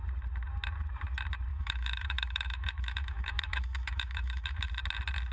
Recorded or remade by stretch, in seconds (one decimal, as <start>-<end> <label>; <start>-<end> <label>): 0.0-1.5 recorded; 1.5-4.7 remade; 4.7-5.3 recorded